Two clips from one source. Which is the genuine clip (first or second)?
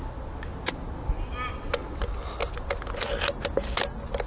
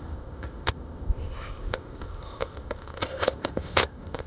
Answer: first